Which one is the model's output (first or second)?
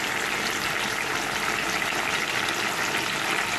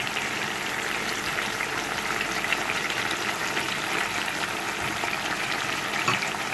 second